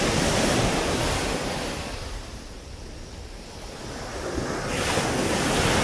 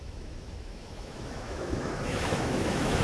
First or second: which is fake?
second